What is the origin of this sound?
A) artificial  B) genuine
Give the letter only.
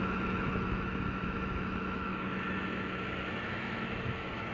A